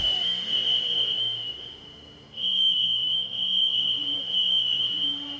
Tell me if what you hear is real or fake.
fake